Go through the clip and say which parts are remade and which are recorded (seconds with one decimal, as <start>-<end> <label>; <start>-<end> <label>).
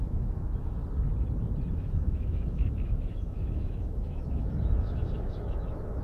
0.0-0.8 remade; 0.8-1.7 recorded; 1.7-6.0 remade